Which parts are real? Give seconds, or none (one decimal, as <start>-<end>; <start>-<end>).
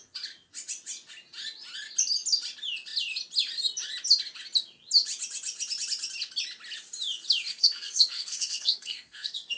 0.0-7.5